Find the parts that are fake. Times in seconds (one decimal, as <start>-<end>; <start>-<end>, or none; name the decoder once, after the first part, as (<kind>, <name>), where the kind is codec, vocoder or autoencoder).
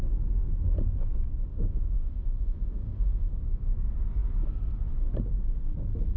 1.5-3.3 (autoencoder, DAC-VAE)